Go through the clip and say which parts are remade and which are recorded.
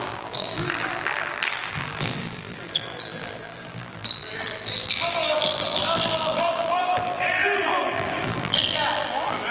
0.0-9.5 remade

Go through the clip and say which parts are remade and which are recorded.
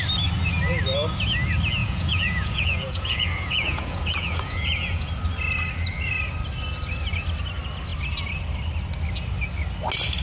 0.0-1.8 recorded; 1.8-5.1 remade; 5.1-10.2 recorded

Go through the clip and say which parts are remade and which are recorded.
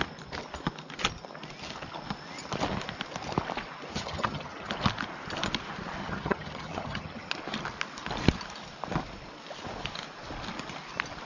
0.0-3.9 recorded; 3.9-4.7 remade; 4.7-6.0 recorded; 6.0-7.3 remade; 7.3-11.2 recorded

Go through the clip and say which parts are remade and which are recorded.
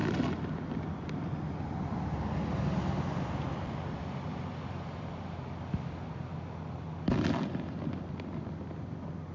0.0-9.3 recorded